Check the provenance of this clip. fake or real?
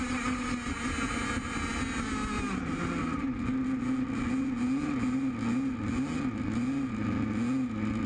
real